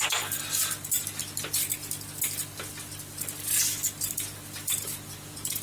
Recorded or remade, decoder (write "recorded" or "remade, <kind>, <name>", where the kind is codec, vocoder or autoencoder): recorded